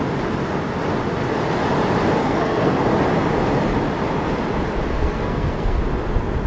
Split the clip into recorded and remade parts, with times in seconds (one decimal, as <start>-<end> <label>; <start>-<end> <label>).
0.0-2.2 recorded; 2.2-2.8 remade; 2.8-4.9 recorded; 4.9-5.8 remade; 5.8-6.5 recorded